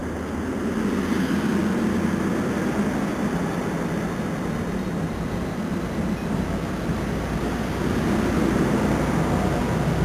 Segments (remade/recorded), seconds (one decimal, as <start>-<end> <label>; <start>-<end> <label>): 0.0-10.0 recorded